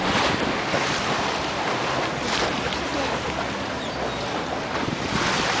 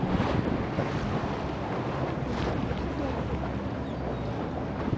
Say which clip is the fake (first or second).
first